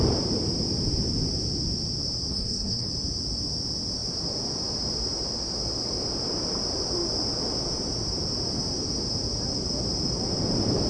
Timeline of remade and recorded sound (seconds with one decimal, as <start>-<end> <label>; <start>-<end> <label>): 0.0-2.3 recorded; 2.3-2.9 remade; 2.9-10.9 recorded